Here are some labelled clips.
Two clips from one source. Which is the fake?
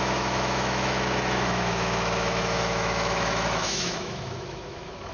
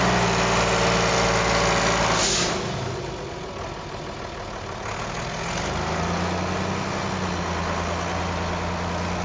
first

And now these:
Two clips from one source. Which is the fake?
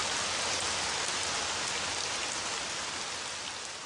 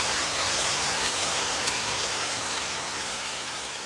second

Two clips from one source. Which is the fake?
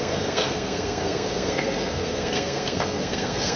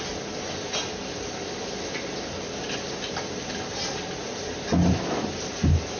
first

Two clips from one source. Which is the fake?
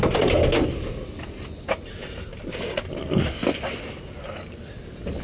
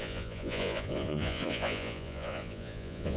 second